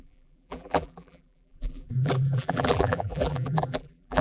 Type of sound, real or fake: fake